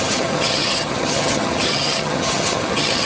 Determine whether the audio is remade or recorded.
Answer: remade